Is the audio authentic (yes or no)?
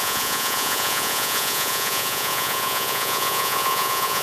no